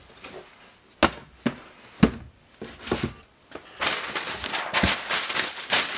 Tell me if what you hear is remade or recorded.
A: recorded